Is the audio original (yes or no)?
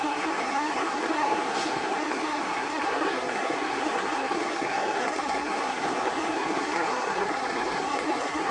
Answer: no